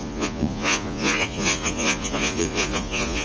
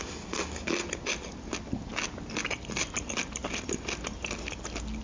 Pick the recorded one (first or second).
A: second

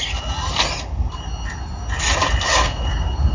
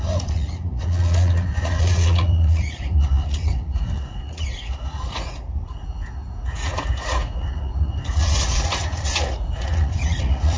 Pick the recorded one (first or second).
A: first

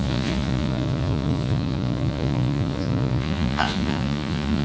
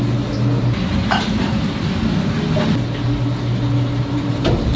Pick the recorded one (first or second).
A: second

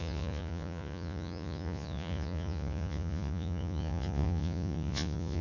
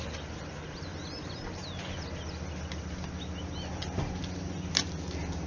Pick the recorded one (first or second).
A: second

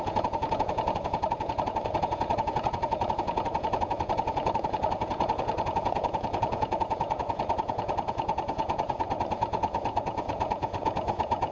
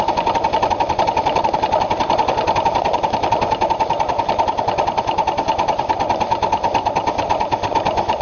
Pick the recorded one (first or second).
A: second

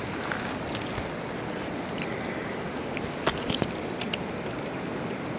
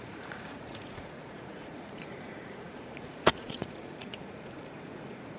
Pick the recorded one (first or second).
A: first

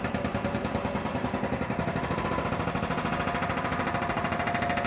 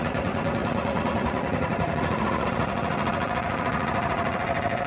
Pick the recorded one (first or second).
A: first